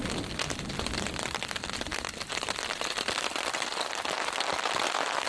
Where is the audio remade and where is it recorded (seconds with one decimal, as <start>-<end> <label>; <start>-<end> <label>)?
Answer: 0.0-5.3 recorded